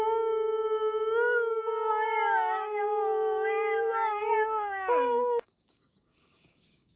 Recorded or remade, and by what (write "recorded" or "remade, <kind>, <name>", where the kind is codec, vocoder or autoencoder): remade, codec, DAC